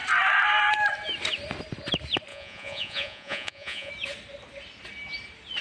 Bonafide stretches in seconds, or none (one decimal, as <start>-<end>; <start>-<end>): 0.0-2.3; 3.9-5.6